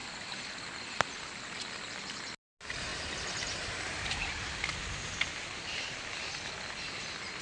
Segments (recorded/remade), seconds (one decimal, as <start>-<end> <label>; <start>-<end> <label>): 0.0-7.4 recorded